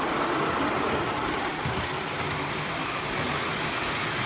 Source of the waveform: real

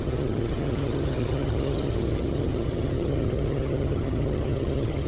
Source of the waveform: fake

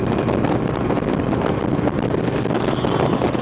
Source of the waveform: real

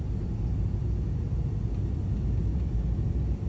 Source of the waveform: real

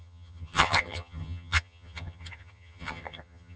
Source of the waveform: fake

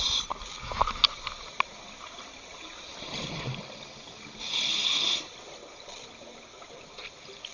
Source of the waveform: real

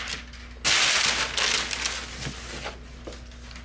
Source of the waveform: real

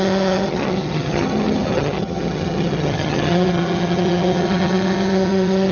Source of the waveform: fake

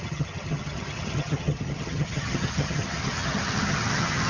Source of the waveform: fake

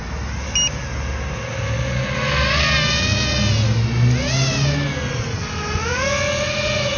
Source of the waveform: real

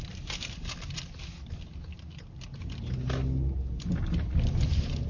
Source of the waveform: real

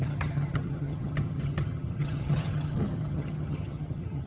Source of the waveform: fake